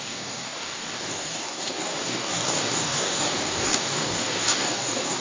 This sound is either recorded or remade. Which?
remade